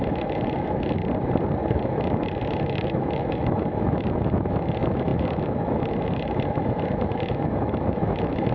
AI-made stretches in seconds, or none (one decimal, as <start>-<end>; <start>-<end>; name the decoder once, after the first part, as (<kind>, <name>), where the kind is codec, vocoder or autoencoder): 0.0-1.0 (autoencoder, DAC-VAE); 1.7-8.5